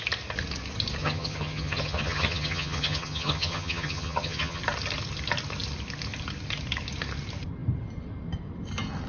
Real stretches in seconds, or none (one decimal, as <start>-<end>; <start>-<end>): 0.0-1.0; 4.6-9.1